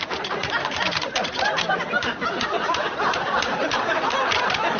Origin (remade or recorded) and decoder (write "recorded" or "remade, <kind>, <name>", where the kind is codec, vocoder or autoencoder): remade, vocoder, BigVGAN v2